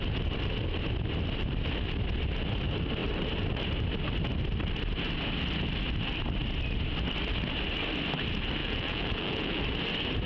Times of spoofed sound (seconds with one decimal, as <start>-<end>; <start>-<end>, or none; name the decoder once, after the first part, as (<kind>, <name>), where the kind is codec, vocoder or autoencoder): 8.6-9.6 (vocoder, Vocos)